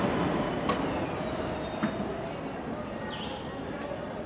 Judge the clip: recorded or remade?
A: recorded